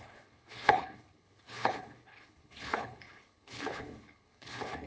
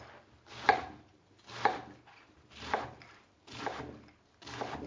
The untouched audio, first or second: second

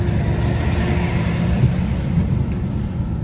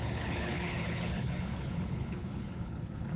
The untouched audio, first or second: first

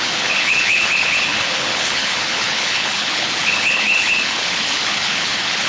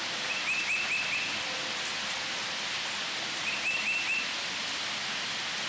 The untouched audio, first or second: second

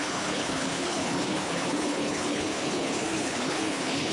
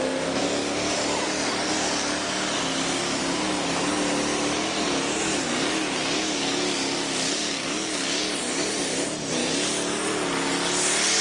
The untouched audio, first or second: second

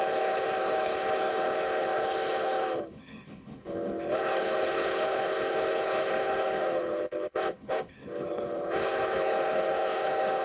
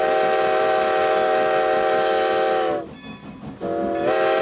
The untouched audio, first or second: second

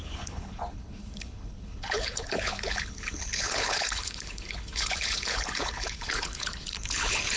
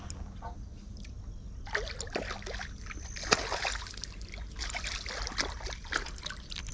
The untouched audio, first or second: second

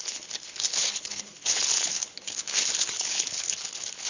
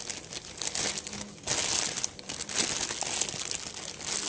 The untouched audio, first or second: second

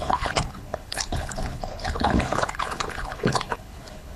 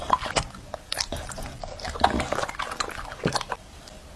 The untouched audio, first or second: second